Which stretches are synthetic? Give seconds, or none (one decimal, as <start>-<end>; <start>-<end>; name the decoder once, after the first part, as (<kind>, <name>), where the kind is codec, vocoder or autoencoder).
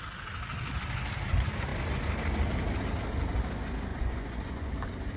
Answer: 3.9-4.7 (vocoder, Vocos)